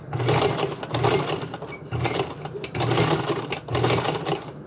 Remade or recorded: recorded